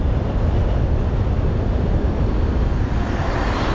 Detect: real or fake real